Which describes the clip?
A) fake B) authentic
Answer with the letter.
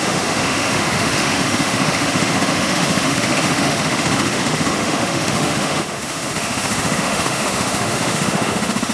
A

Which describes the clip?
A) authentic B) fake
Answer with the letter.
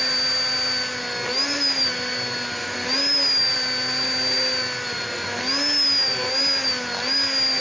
A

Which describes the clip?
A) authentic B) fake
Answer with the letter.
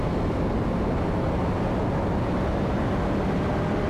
A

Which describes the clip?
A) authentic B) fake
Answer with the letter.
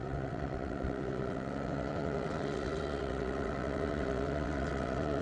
B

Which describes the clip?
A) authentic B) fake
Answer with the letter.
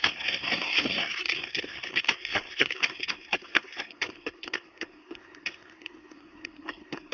B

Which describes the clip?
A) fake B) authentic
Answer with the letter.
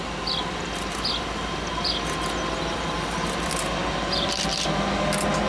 B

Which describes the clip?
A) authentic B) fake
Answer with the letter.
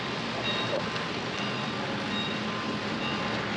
A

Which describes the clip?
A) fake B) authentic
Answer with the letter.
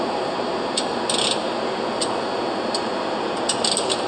B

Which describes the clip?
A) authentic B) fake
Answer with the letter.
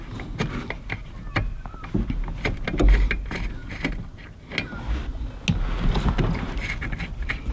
A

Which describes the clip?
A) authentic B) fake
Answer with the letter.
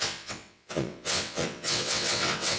B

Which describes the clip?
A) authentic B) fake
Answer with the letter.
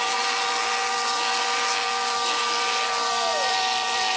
A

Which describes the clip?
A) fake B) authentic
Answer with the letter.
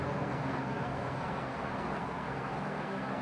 A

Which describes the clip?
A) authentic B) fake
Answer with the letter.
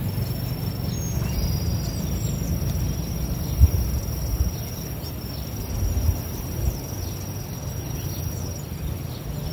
A